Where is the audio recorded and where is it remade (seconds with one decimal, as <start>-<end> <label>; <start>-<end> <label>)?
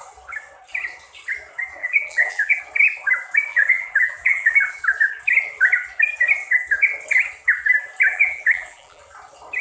0.0-1.8 recorded; 1.8-2.6 remade; 2.6-3.5 recorded; 3.5-4.8 remade; 4.8-8.1 recorded; 8.1-9.0 remade; 9.0-9.6 recorded